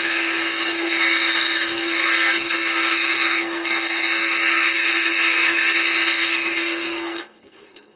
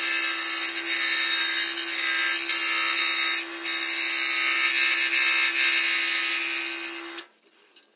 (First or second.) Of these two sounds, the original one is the second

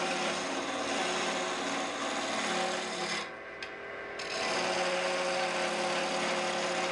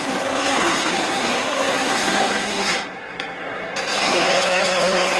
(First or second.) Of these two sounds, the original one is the first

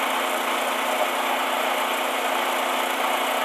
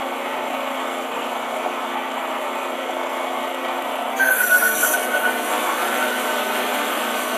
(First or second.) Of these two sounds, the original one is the first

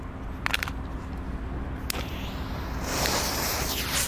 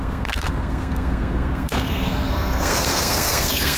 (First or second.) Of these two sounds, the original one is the first